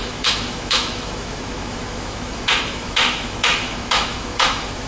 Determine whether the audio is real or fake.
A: fake